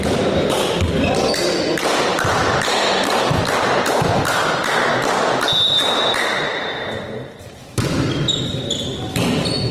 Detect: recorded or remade recorded